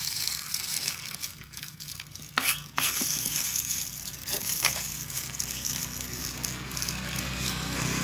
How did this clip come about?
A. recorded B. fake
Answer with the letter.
B